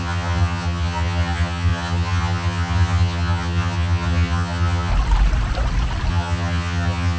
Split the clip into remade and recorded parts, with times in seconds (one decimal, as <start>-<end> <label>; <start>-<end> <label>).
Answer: 0.0-4.9 remade; 4.9-6.1 recorded; 6.1-7.2 remade

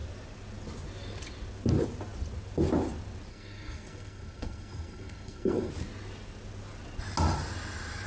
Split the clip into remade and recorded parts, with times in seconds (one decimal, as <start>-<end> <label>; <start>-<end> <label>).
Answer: 0.0-3.3 recorded; 3.3-5.7 remade; 5.7-8.1 recorded

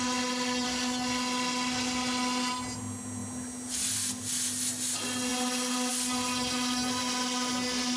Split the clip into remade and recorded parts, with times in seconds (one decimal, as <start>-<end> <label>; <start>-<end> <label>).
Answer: 0.0-8.0 recorded

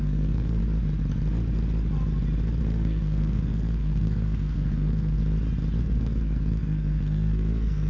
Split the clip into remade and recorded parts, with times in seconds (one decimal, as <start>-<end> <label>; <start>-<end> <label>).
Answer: 0.0-0.6 remade; 0.6-2.6 recorded; 2.6-5.2 remade; 5.2-5.8 recorded; 5.8-7.9 remade

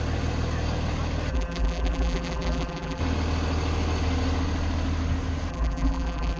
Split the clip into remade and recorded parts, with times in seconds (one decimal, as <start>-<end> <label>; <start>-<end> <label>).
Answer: 0.0-1.3 recorded; 1.3-3.0 remade; 3.0-5.5 recorded; 5.5-6.4 remade

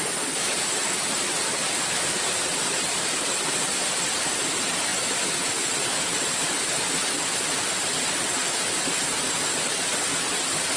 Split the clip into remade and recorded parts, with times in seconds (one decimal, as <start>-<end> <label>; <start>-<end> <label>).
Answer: 0.0-0.4 recorded; 0.4-4.2 remade; 4.2-8.4 recorded; 8.4-8.9 remade; 8.9-10.8 recorded

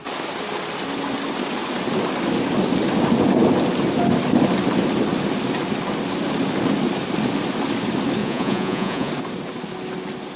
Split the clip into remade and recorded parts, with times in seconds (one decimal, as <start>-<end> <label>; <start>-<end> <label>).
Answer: 0.0-8.2 recorded; 8.2-9.1 remade; 9.1-10.4 recorded

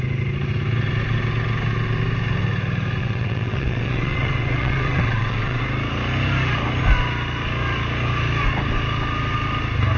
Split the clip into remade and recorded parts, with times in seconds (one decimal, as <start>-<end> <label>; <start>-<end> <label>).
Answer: 0.0-3.0 recorded; 3.0-5.6 remade; 5.6-10.0 recorded